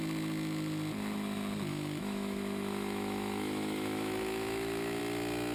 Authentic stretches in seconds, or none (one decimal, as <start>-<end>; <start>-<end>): 0.0-1.7; 5.0-5.5